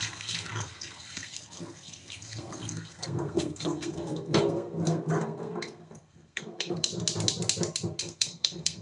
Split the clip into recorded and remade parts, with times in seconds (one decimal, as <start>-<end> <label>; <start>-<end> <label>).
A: 0.0-6.9 remade; 6.9-8.0 recorded; 8.0-8.8 remade